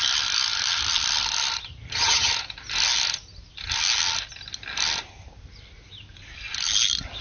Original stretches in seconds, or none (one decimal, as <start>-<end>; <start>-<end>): 0.0-1.7; 2.3-7.2

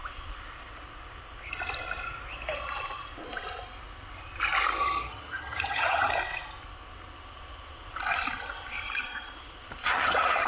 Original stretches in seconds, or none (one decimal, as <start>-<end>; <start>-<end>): 0.0-4.8; 6.1-9.8

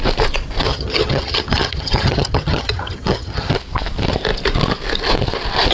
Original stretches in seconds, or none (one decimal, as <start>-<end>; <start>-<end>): 0.0-0.7; 3.5-5.7